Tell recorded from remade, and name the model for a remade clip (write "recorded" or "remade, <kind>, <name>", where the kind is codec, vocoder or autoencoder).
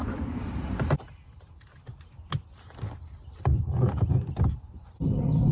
recorded